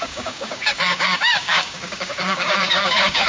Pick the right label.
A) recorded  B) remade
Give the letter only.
B